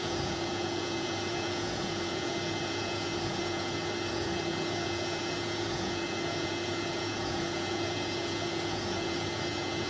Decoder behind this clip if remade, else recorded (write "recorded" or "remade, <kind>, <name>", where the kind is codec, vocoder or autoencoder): remade, vocoder, Vocos